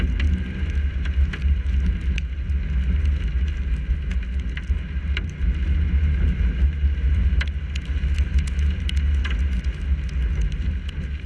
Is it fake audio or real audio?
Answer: real